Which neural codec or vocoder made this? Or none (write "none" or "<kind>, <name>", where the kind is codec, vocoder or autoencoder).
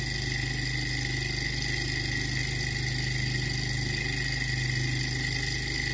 none